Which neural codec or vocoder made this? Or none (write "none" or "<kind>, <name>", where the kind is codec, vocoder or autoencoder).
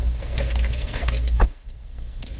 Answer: codec, SNAC